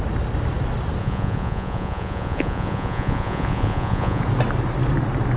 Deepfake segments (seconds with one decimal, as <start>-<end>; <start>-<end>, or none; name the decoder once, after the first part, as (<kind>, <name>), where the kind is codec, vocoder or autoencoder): 1.0-4.2 (vocoder, Vocos)